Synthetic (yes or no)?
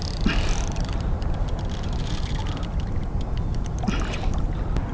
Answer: no